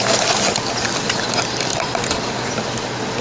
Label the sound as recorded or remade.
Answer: recorded